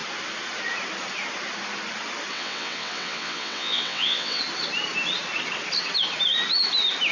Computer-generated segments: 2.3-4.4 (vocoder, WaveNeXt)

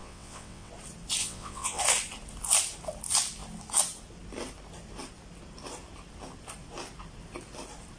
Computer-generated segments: 0.0-0.7 (vocoder, WaveNeXt); 1.2-1.8

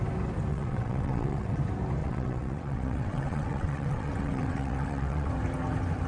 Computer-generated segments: 0.5-1.6 (vocoder, WaveNeXt); 2.0-5.3

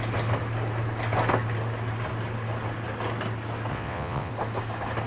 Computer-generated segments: 3.7-4.3 (vocoder, WaveNeXt)

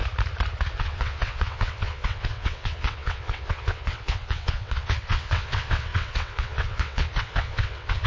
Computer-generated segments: 0.8-8.1 (vocoder, WaveNeXt)